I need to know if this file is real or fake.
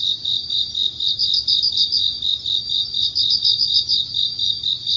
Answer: real